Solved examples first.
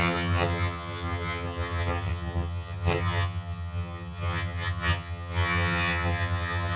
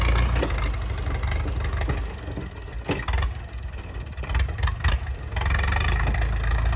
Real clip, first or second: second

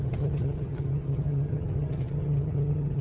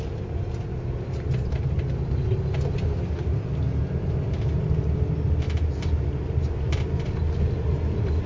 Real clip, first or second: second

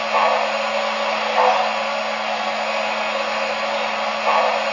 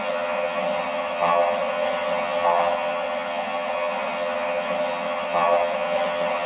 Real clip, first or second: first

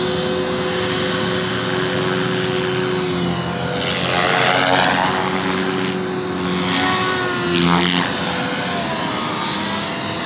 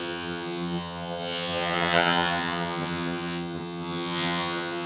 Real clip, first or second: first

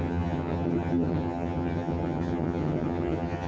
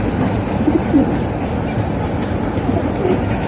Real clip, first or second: second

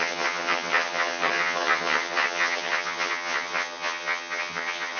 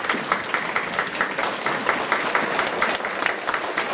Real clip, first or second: second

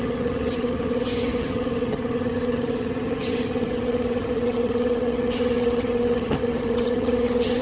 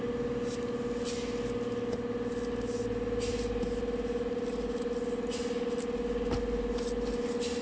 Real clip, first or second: second